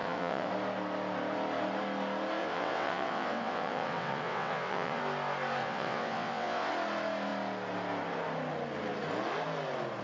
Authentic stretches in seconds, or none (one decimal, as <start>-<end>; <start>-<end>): 0.5-2.4; 5.0-5.6; 6.7-10.0